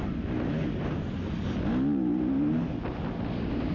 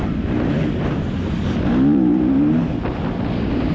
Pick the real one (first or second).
first